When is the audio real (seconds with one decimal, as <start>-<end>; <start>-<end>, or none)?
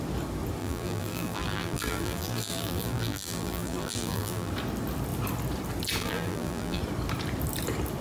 0.0-0.6; 4.5-6.0; 6.8-8.0